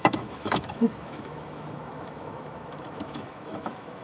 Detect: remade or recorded remade